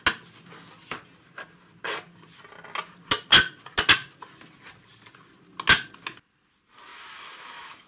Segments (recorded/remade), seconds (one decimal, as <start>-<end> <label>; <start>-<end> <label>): 0.0-6.9 recorded; 6.9-7.9 remade